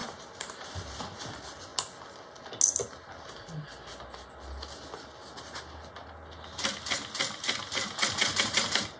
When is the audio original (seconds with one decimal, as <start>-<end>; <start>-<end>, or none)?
1.2-8.2